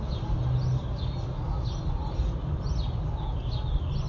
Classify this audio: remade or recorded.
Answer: recorded